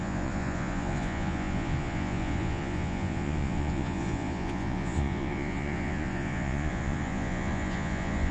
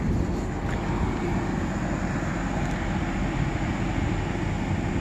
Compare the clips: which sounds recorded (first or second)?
second